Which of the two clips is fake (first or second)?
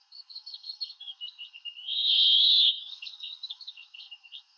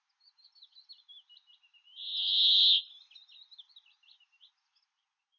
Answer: first